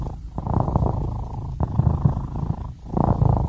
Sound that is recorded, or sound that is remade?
recorded